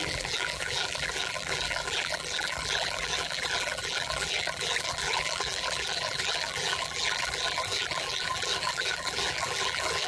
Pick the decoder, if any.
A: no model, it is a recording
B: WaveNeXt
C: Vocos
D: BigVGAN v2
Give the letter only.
D